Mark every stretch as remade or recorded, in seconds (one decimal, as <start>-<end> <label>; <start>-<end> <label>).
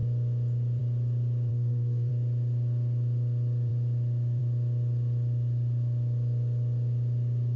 0.0-1.5 recorded; 1.5-2.1 remade; 2.1-7.6 recorded